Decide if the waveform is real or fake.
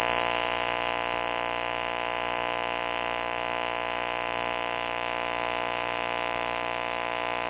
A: real